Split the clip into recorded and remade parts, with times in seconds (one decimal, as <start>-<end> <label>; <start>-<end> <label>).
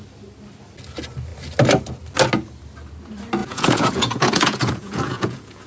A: 0.0-3.4 recorded; 3.4-5.7 remade